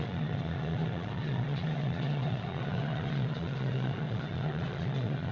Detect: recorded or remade remade